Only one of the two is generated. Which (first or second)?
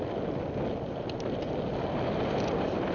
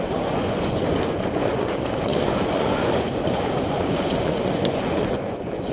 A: second